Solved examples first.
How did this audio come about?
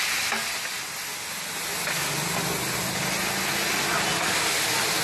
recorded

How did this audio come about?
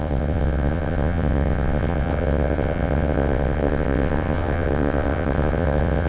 remade